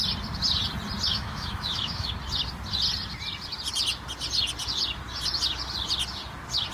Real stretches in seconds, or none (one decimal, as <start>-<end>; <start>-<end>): 0.0-1.1; 2.1-6.7